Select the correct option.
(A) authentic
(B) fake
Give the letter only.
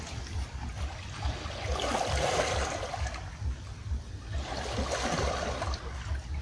A